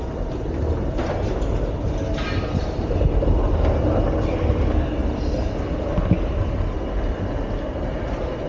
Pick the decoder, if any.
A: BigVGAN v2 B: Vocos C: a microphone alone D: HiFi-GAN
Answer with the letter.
C